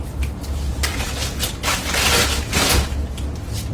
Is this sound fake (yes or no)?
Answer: no